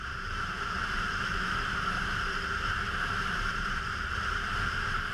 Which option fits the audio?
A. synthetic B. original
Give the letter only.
A